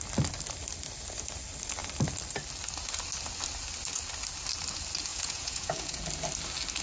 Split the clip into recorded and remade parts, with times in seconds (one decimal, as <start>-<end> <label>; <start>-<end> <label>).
0.0-5.1 recorded; 5.1-6.0 remade; 6.0-6.8 recorded